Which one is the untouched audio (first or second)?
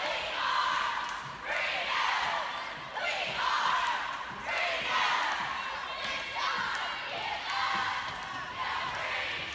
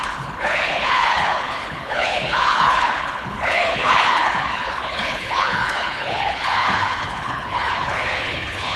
first